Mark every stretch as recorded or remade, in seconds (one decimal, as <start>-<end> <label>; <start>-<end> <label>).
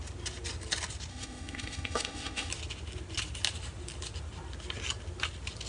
0.0-1.1 recorded; 1.1-2.5 remade; 2.5-5.7 recorded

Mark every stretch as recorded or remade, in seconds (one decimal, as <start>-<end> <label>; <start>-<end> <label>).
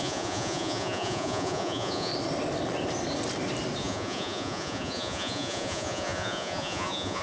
0.0-2.1 remade; 2.1-3.8 recorded; 3.8-7.2 remade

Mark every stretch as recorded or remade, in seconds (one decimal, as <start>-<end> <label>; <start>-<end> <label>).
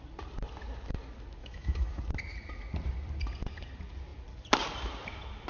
0.0-1.4 recorded; 1.4-2.0 remade; 2.0-5.5 recorded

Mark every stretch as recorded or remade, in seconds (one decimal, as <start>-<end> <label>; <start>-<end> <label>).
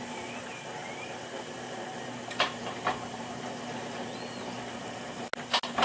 0.0-0.8 recorded; 0.8-4.2 remade; 4.2-5.8 recorded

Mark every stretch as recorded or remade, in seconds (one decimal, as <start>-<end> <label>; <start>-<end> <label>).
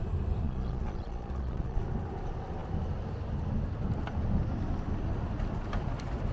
0.0-0.4 recorded; 0.4-1.8 remade; 1.8-6.3 recorded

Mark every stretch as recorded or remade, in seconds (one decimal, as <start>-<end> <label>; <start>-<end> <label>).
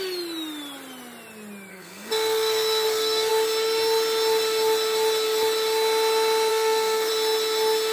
0.0-1.7 recorded; 1.7-3.3 remade; 3.3-6.5 recorded; 6.5-7.1 remade; 7.1-7.9 recorded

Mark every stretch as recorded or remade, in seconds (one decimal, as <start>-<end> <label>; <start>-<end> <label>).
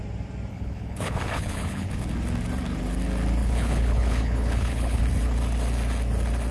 0.0-0.5 recorded; 0.5-1.9 remade; 1.9-3.4 recorded; 3.4-5.0 remade; 5.0-6.5 recorded